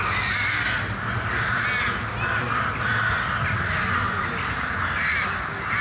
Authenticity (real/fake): real